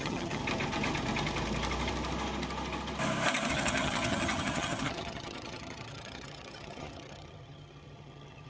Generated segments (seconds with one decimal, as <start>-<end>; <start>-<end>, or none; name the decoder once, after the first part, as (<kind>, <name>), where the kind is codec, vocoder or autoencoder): 0.0-0.4 (vocoder, HiFi-GAN); 3.5-8.5